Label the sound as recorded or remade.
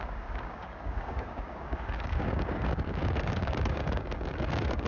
remade